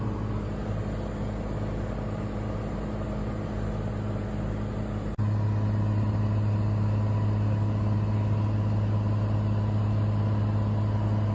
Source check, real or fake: real